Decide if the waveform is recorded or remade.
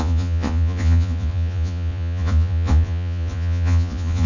remade